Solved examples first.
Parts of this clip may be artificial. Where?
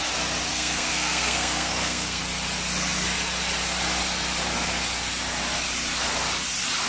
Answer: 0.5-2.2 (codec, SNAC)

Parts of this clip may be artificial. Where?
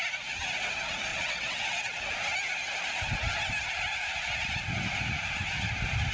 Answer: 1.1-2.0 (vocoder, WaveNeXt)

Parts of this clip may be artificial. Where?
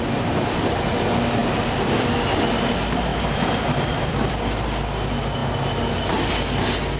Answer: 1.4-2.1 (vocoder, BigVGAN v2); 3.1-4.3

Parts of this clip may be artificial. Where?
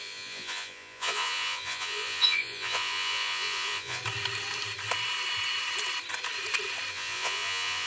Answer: 0.0-4.0 (vocoder, Vocos); 6.9-7.9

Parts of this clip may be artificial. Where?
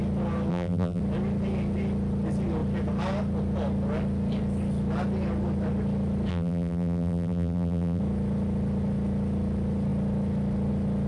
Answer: 0.5-1.0 (vocoder, BigVGAN v2); 6.3-8.0